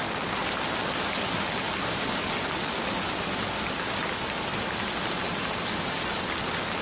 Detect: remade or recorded recorded